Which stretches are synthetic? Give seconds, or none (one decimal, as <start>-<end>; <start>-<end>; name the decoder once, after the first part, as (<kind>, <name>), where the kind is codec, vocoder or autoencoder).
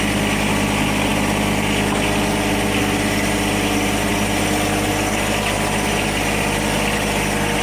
none